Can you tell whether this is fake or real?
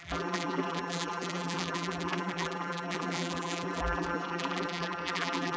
fake